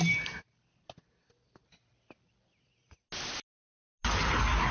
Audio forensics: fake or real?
real